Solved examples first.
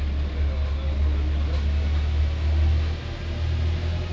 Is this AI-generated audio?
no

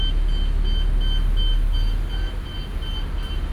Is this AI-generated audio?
no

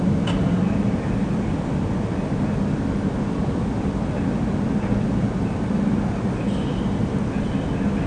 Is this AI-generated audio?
no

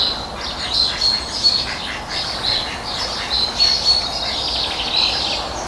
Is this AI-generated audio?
no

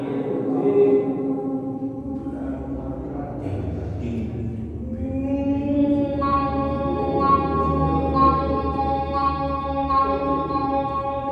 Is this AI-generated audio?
no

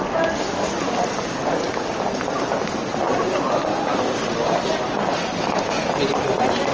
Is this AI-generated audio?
no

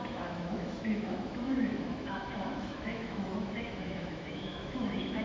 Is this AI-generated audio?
yes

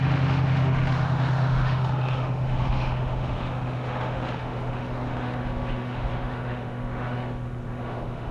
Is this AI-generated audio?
yes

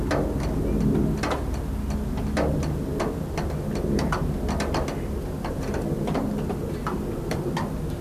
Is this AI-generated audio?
no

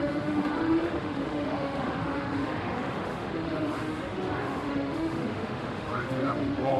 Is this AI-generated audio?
yes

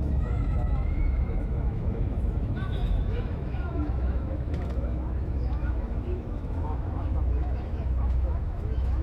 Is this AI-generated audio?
yes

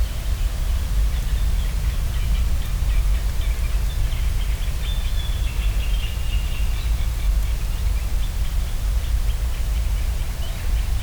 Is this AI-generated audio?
no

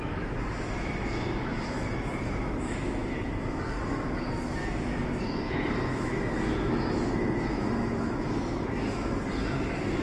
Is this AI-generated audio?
yes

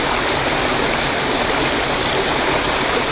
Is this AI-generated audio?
no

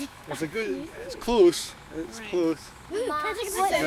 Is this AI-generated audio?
yes